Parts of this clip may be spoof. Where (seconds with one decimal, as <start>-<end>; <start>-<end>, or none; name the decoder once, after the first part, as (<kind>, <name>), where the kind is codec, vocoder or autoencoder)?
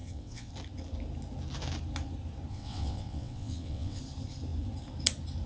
0.0-0.5 (vocoder, WaveNeXt); 2.5-4.0